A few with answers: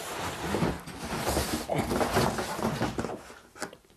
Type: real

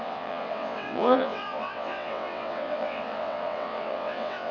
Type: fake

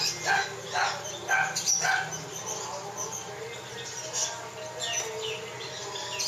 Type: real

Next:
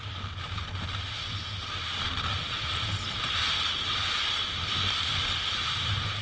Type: real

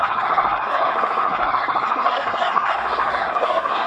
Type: fake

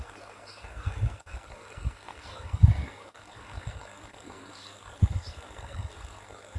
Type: fake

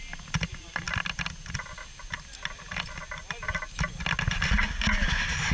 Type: real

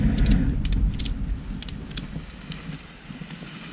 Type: real